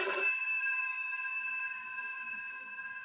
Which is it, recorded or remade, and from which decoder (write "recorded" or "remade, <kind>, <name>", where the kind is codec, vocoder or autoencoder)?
remade, codec, SNAC